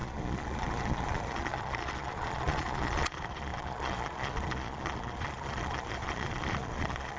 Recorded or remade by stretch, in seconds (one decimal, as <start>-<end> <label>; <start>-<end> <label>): 0.0-7.2 remade